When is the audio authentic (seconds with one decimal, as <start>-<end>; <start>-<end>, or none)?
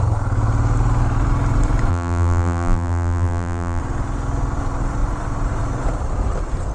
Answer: 0.0-1.9; 3.8-6.7